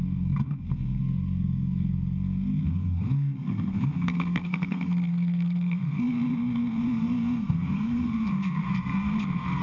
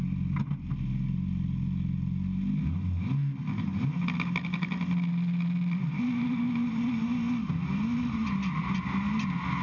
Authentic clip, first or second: second